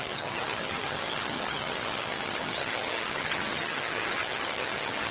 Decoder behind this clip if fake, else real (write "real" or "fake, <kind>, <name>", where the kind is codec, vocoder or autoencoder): fake, vocoder, HiFi-GAN